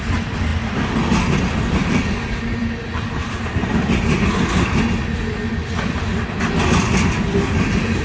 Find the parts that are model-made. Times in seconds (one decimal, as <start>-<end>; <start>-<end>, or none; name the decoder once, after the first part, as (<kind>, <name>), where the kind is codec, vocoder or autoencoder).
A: none